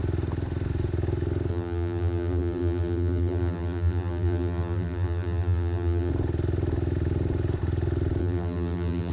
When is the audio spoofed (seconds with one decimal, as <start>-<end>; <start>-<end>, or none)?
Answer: 1.5-6.1; 8.2-9.1